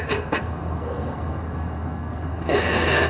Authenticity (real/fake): fake